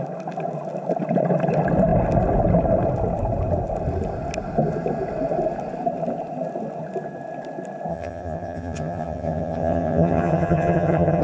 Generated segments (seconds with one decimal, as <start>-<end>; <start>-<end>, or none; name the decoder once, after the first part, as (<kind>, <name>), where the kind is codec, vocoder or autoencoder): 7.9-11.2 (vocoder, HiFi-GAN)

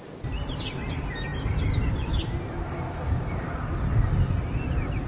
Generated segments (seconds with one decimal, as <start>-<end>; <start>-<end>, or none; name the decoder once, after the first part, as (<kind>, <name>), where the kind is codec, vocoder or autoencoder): none

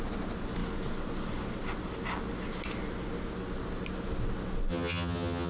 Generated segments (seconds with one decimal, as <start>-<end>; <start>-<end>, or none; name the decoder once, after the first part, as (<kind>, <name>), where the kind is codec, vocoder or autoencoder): 4.7-5.5 (vocoder, HiFi-GAN)